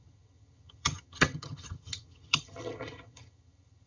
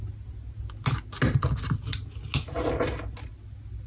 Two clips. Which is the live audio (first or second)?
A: second